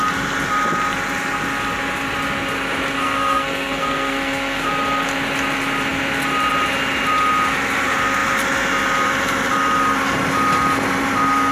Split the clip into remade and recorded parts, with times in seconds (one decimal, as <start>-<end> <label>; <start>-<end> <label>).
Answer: 0.0-3.0 recorded; 3.0-4.7 remade; 4.7-11.5 recorded